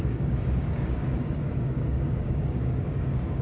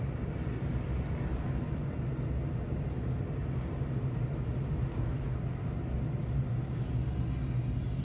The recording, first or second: second